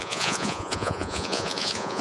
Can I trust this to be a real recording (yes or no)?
no